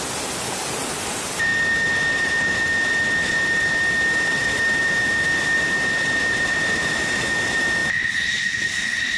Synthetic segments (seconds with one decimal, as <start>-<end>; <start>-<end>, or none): none